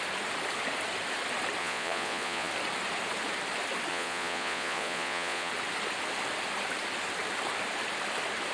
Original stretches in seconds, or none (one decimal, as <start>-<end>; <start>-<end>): 0.0-1.6; 2.5-3.9; 5.5-8.5